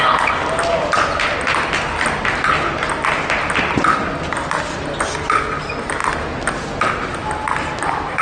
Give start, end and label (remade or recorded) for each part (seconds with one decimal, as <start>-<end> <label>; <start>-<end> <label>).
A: 0.0-8.2 recorded

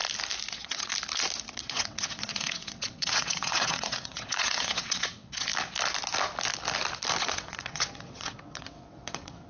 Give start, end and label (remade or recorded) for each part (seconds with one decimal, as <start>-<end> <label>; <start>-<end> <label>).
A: 0.0-0.5 recorded; 0.5-0.9 remade; 0.9-1.6 recorded; 1.6-5.5 remade; 5.5-7.2 recorded; 7.2-9.5 remade